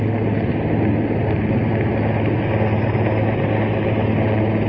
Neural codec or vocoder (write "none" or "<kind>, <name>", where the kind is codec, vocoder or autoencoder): none